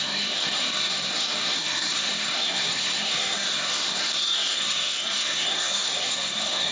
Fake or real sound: fake